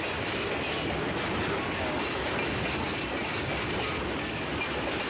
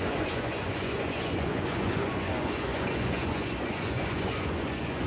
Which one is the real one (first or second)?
first